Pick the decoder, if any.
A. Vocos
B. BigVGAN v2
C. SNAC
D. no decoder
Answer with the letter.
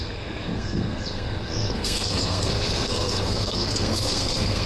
C